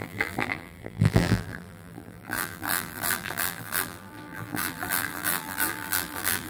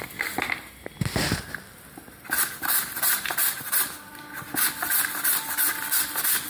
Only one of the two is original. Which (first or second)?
second